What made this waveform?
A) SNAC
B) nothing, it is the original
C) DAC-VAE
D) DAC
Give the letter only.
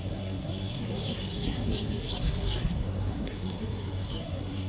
A